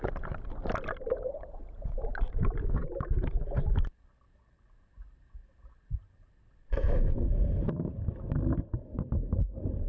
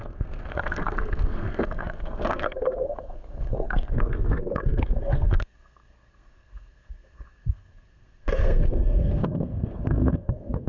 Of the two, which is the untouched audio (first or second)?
first